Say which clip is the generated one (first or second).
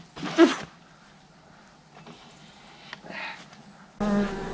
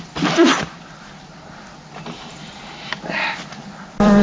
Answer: second